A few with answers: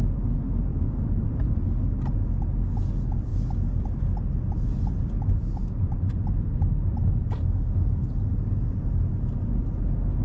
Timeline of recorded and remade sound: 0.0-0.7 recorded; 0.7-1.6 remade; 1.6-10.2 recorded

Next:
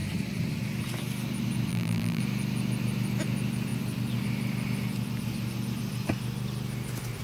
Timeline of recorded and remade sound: 0.0-1.7 recorded; 1.7-2.2 remade; 2.2-7.2 recorded

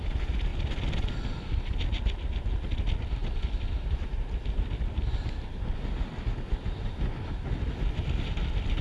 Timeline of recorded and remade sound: 0.0-8.8 recorded